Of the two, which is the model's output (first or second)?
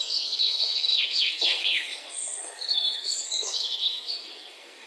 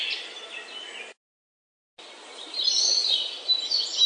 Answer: first